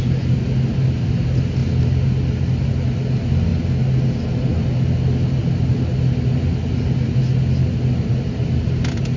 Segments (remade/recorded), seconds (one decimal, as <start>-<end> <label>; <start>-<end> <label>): 0.0-9.2 recorded